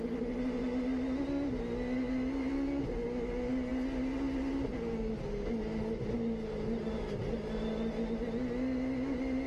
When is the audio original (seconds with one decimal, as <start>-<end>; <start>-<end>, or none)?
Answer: 0.0-9.5